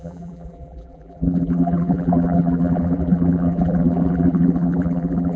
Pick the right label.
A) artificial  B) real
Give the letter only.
A